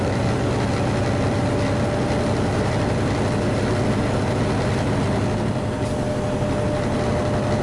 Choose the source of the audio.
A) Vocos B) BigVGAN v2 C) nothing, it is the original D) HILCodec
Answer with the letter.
C